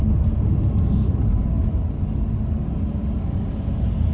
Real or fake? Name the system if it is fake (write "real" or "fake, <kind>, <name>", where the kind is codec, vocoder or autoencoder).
real